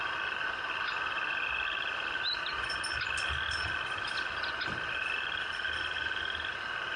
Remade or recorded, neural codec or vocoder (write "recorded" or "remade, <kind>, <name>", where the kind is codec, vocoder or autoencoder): recorded